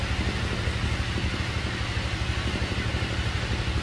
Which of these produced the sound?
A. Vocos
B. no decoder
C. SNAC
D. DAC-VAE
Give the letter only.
B